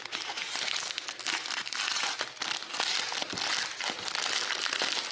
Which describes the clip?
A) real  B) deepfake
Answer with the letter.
A